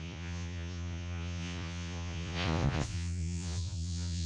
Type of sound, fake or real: fake